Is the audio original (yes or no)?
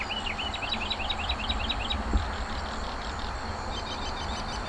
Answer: yes